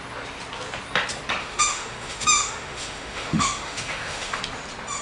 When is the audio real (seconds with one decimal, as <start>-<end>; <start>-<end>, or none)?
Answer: 0.0-1.4; 4.4-5.0